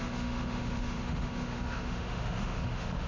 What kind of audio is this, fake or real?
fake